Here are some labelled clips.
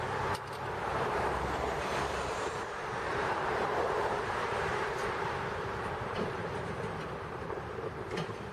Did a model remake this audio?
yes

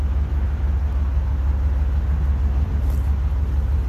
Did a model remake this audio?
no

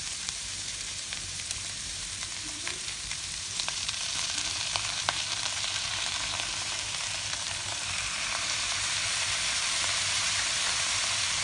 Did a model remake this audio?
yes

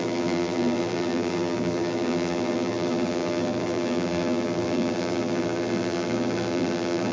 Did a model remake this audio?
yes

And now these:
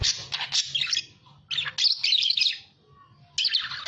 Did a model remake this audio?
no